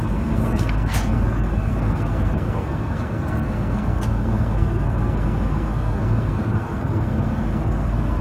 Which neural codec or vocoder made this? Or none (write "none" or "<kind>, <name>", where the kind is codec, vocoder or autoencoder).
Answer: codec, SNAC